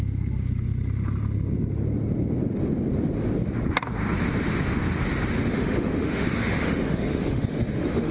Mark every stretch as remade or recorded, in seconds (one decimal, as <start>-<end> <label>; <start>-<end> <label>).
0.0-5.5 recorded; 5.5-8.1 remade